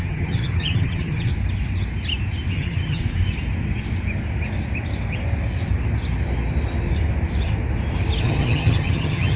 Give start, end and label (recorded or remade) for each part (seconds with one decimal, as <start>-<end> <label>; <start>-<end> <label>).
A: 0.0-1.3 remade; 1.3-2.5 recorded; 2.5-3.0 remade; 3.0-8.2 recorded; 8.2-9.4 remade